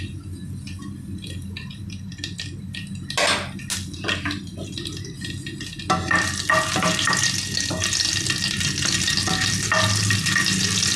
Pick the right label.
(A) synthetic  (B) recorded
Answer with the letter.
B